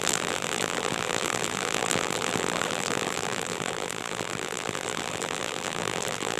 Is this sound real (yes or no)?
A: no